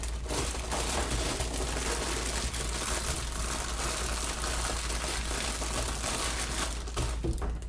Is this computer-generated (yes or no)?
no